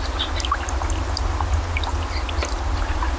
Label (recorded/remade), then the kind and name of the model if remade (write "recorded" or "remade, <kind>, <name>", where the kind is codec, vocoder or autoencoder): recorded